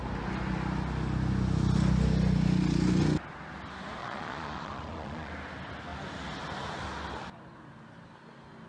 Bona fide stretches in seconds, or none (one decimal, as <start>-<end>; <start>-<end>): 0.0-4.0; 5.3-8.7

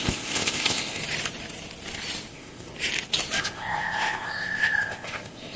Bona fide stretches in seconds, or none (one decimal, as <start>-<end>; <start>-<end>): 1.0-2.3; 2.7-3.4